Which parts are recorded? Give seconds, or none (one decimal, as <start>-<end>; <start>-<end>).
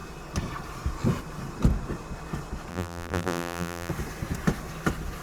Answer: 0.0-2.7; 3.9-5.2